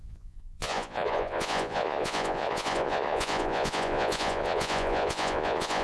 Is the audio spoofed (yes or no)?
yes